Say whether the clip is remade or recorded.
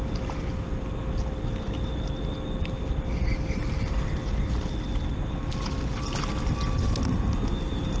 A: recorded